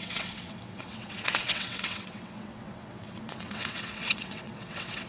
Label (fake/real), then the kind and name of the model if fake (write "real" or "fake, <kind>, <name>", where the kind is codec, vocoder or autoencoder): fake, vocoder, WaveNeXt